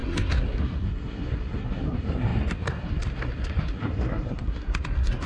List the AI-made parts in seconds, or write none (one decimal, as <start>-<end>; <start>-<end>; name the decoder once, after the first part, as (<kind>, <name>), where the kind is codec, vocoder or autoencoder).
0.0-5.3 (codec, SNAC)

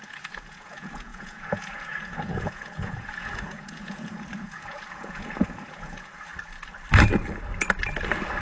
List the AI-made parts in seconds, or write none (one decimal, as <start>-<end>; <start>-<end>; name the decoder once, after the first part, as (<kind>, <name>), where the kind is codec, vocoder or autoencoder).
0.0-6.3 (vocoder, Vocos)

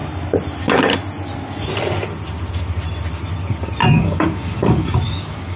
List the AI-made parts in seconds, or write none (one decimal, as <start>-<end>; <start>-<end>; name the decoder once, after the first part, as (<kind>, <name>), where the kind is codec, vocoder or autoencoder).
3.8-5.6 (codec, DAC)

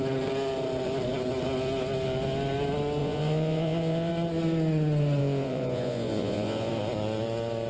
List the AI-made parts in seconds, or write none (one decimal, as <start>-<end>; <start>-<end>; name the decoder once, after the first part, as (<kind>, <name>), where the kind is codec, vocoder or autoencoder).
3.0-4.1 (vocoder, Vocos); 5.2-6.7

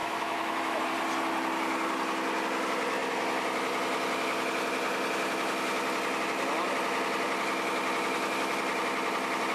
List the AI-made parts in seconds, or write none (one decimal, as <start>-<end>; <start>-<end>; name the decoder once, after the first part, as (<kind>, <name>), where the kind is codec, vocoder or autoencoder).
0.0-0.8 (autoencoder, DAC-VAE)

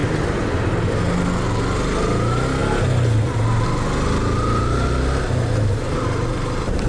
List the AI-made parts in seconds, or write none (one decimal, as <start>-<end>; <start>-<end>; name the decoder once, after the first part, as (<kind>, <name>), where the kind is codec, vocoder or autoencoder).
none

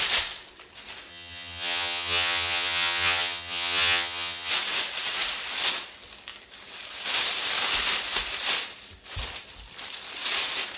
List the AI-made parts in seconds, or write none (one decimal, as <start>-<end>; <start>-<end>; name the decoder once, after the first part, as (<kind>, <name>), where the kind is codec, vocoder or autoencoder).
1.1-4.5 (vocoder, HiFi-GAN)

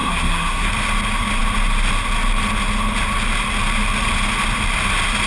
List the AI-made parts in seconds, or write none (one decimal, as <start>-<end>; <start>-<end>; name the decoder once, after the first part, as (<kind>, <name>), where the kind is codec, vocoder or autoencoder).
0.0-0.7 (codec, SNAC)